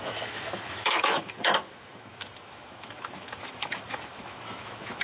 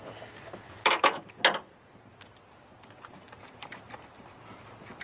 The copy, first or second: first